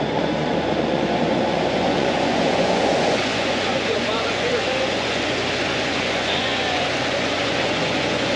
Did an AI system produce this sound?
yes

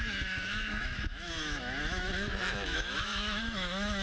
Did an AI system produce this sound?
yes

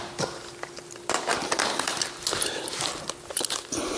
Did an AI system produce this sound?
no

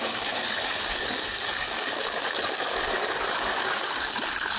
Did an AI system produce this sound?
yes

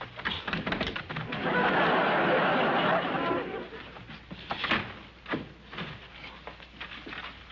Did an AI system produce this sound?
no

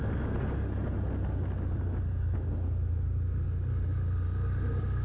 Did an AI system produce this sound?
no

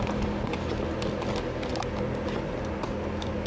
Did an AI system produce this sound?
no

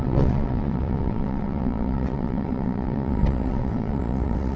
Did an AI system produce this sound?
yes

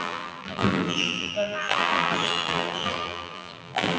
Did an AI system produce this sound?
yes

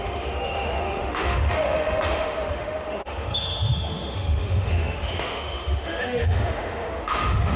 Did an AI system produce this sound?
yes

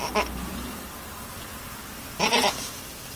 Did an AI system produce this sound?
no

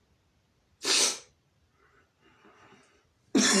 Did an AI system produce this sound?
no